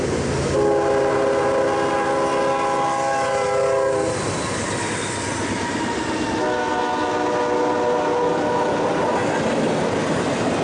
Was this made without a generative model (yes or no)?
yes